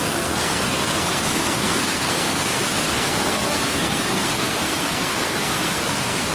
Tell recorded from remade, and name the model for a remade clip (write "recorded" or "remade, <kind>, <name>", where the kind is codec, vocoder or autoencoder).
remade, codec, SNAC